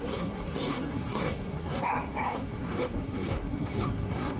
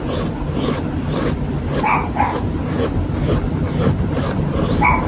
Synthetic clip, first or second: first